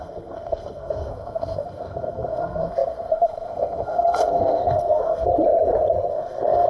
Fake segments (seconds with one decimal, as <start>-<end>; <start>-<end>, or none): 0.0-5.3; 6.1-6.7